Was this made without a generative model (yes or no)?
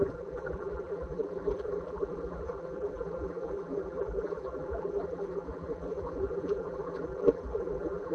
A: no